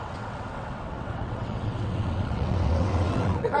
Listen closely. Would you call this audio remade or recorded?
remade